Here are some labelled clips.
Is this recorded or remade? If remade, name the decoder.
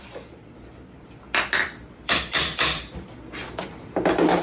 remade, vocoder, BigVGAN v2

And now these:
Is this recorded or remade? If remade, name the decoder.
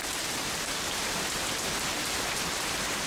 remade, vocoder, BigVGAN v2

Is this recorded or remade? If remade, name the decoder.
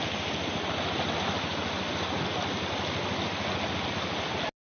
recorded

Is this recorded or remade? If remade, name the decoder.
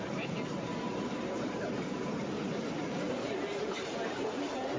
remade, vocoder, BigVGAN v2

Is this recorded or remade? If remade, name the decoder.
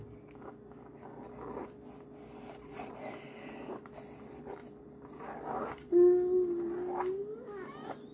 recorded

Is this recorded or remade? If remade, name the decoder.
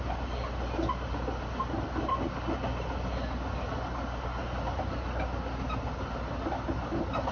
recorded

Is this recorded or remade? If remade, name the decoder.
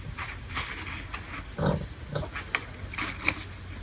recorded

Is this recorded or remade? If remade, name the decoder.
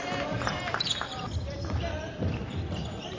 recorded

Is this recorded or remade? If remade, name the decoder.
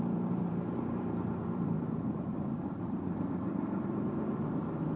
remade, vocoder, BigVGAN v2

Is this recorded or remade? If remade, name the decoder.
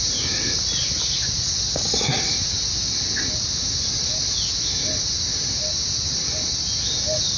recorded